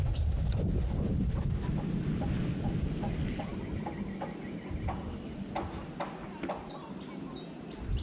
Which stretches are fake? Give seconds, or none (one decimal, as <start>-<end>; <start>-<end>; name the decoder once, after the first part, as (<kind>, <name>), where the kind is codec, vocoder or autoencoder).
none